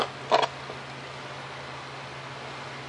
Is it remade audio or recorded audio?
recorded